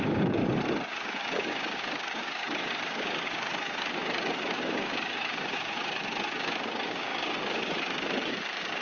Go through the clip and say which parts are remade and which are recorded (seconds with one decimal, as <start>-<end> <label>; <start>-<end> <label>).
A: 0.0-0.4 remade; 0.4-0.9 recorded; 0.9-8.8 remade